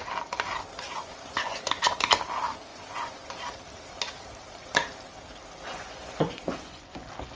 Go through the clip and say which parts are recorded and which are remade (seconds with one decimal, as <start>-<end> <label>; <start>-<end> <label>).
0.0-1.0 recorded; 1.0-1.7 remade; 1.7-2.7 recorded; 2.7-3.3 remade; 3.3-5.7 recorded; 5.7-7.0 remade; 7.0-7.4 recorded